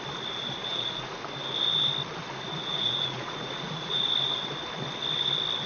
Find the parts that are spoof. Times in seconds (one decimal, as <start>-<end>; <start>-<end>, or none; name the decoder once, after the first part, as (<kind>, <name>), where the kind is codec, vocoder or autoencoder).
0.6-1.2 (vocoder, Vocos); 2.6-4.0